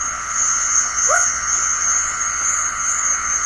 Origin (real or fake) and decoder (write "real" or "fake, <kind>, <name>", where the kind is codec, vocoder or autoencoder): fake, vocoder, Vocos